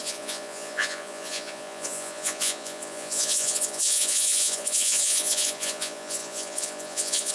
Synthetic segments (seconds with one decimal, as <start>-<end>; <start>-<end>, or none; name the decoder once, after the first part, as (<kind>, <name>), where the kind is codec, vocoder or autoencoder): 0.0-7.3 (vocoder, Vocos)